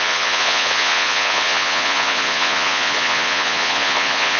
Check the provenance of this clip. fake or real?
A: fake